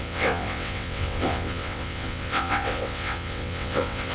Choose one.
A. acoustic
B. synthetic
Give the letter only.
B